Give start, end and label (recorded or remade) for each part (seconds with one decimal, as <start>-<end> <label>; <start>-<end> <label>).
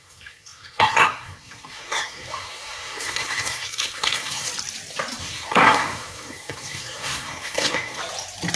0.0-4.5 remade; 4.5-5.2 recorded; 5.2-8.0 remade; 8.0-8.6 recorded